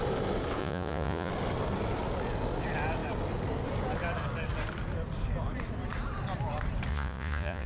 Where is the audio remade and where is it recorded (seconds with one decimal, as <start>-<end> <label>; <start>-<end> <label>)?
0.0-0.6 recorded; 0.6-1.3 remade; 1.3-6.9 recorded; 6.9-7.7 remade